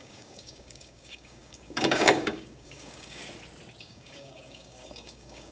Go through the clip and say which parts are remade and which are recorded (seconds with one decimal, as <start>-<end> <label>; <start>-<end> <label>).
0.0-3.2 remade; 3.2-3.8 recorded; 3.8-5.5 remade